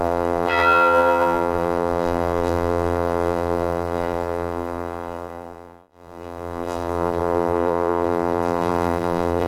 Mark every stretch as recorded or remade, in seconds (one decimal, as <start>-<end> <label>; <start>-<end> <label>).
0.0-9.5 remade

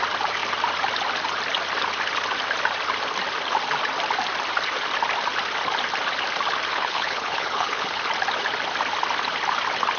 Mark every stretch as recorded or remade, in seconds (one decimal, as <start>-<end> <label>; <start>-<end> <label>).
0.0-6.7 recorded; 6.7-8.0 remade; 8.0-10.0 recorded

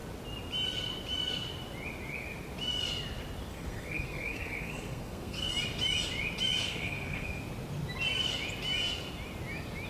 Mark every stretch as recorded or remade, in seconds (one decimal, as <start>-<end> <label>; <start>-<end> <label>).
0.0-3.5 recorded; 3.5-5.5 remade; 5.5-6.6 recorded; 6.6-7.4 remade; 7.4-9.9 recorded

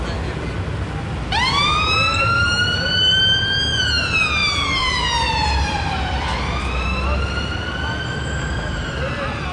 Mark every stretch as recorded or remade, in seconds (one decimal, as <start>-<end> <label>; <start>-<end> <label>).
0.0-1.7 recorded; 1.7-3.4 remade; 3.4-4.4 recorded; 4.4-6.0 remade; 6.0-9.5 recorded

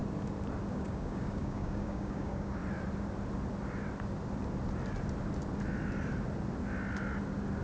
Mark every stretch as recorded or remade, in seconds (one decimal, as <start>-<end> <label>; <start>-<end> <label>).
0.0-0.7 recorded; 0.7-2.6 remade; 2.6-7.6 recorded

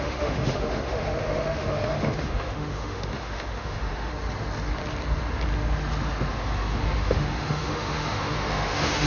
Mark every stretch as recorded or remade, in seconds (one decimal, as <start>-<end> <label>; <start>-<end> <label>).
0.0-4.1 remade; 4.1-6.3 recorded; 6.3-9.1 remade

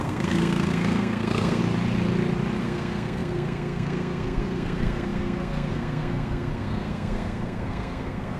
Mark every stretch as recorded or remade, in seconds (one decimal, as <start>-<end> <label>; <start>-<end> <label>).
0.0-1.6 remade; 1.6-2.6 recorded; 2.6-8.4 remade

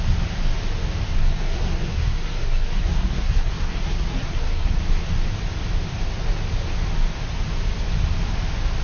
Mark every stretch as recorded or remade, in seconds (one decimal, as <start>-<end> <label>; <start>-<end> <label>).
0.0-1.2 recorded; 1.2-4.8 remade; 4.8-8.8 recorded